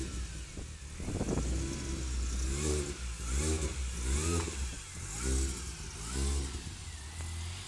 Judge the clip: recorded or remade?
recorded